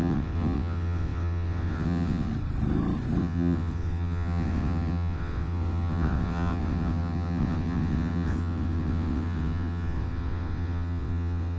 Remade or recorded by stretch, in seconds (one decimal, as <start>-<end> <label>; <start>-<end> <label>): 0.0-2.3 remade; 2.3-3.2 recorded; 3.2-11.6 remade